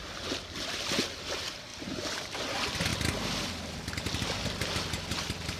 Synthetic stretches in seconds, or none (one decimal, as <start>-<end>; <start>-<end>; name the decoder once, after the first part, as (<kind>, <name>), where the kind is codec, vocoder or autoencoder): 1.7-2.4 (vocoder, BigVGAN v2)